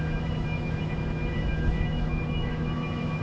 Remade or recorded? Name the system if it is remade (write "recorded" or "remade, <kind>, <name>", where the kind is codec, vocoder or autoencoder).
remade, autoencoder, DAC-VAE